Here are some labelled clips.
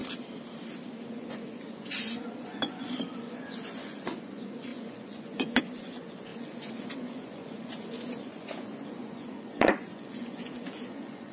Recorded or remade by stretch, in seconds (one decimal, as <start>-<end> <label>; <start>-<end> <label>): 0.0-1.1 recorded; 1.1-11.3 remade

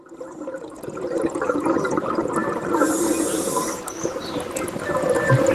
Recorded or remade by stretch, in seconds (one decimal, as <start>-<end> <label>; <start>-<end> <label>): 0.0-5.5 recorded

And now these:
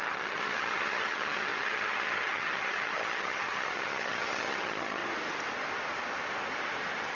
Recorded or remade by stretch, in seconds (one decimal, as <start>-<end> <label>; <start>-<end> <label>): 0.0-5.0 remade; 5.0-7.1 recorded

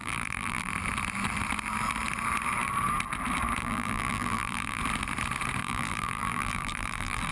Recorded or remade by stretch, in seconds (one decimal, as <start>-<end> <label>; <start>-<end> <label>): 0.0-0.7 remade; 0.7-3.6 recorded; 3.6-4.8 remade; 4.8-5.6 recorded; 5.6-7.3 remade

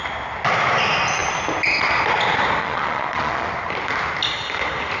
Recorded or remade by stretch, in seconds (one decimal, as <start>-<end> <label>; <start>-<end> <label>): 0.0-2.6 recorded; 2.6-3.5 remade; 3.5-5.0 recorded

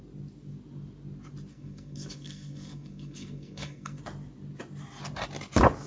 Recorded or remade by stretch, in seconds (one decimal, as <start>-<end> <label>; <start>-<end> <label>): 0.0-1.5 recorded; 1.5-4.0 remade; 4.0-5.9 recorded